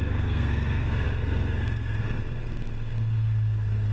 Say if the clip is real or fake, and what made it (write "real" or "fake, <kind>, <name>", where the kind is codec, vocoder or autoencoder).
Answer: fake, codec, SNAC